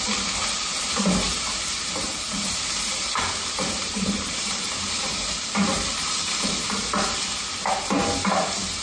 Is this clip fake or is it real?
fake